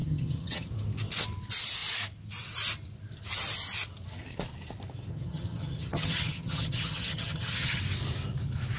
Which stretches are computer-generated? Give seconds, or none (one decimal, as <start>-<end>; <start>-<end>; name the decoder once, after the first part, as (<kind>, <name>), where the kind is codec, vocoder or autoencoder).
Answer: 0.0-0.7 (vocoder, HiFi-GAN); 5.1-7.8